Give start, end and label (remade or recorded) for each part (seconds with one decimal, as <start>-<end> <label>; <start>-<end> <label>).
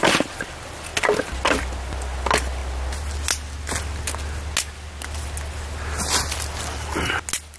0.0-7.6 recorded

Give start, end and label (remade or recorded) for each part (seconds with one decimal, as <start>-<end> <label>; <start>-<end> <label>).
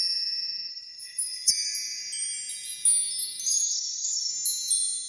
0.0-0.7 recorded; 0.7-1.5 remade; 1.5-3.5 recorded; 3.5-4.3 remade; 4.3-5.1 recorded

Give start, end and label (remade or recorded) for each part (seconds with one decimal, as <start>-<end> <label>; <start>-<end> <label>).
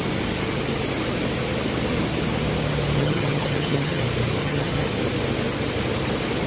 0.0-3.0 recorded; 3.0-4.0 remade; 4.0-4.4 recorded; 4.4-4.9 remade; 4.9-6.5 recorded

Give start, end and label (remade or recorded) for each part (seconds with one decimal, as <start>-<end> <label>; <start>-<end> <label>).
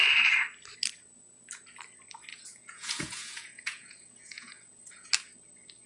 0.0-2.3 recorded; 2.3-5.1 remade; 5.1-5.9 recorded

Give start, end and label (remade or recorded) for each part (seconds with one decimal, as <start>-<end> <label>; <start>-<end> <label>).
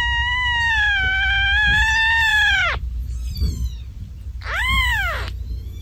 0.0-2.3 recorded; 2.3-4.1 remade; 4.1-5.8 recorded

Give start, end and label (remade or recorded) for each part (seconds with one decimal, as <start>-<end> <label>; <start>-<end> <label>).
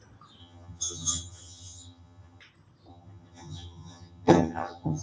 0.0-0.4 recorded; 0.4-2.4 remade; 2.4-2.9 recorded; 2.9-5.0 remade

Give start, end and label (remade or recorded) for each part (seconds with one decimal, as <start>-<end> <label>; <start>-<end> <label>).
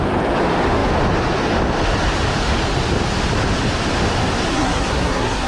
0.0-4.5 recorded; 4.5-5.5 remade